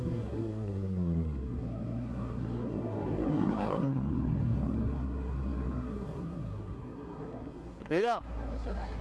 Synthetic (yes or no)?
yes